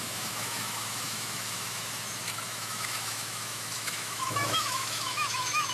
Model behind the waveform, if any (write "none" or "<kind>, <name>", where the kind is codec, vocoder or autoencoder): autoencoder, DAC-VAE